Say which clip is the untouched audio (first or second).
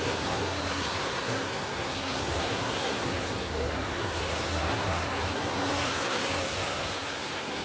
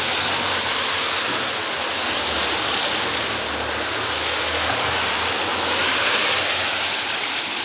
second